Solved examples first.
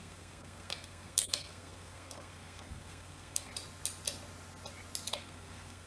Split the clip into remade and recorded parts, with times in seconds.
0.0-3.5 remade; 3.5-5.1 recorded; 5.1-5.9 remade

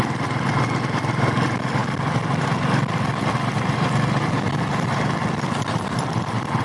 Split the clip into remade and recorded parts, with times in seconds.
0.0-6.6 recorded

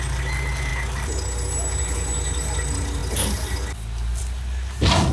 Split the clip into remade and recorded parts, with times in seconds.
0.0-5.1 recorded